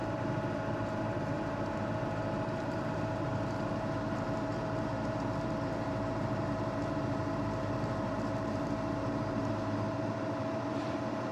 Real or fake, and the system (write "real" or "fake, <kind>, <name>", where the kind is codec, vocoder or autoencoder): fake, vocoder, BigVGAN v2